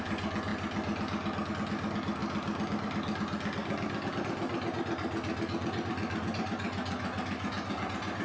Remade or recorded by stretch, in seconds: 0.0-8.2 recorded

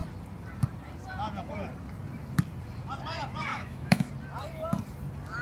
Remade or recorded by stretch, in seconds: 0.0-3.5 recorded; 3.5-4.1 remade; 4.1-5.4 recorded